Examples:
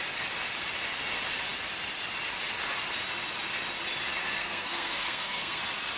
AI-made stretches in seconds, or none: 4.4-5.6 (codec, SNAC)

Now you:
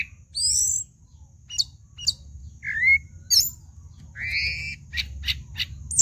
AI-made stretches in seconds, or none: none

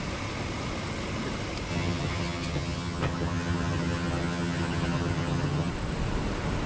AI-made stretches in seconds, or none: 1.7-5.7 (vocoder, HiFi-GAN)

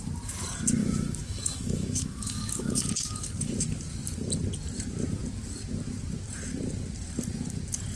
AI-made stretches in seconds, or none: 0.8-3.3 (autoencoder, DAC-VAE)

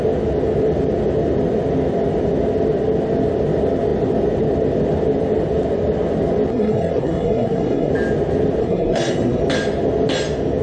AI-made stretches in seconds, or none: 6.5-7.9 (codec, SNAC); 8.6-9.4

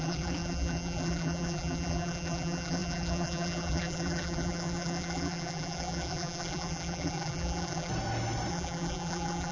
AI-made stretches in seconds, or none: 0.0-7.9 (vocoder, BigVGAN v2); 8.5-9.5

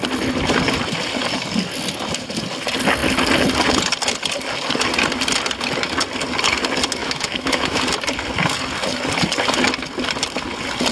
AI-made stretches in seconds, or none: 7.0-7.8 (autoencoder, DAC-VAE)